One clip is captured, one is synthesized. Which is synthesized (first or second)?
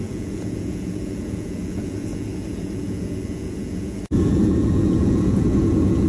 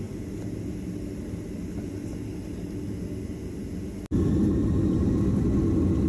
first